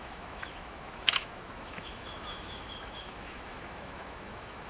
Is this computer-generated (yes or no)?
yes